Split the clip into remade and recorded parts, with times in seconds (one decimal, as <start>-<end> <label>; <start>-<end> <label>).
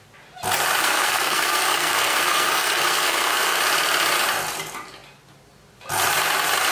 0.0-0.8 recorded; 0.8-3.6 remade; 3.6-6.7 recorded